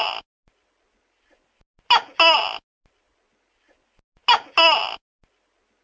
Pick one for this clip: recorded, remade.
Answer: recorded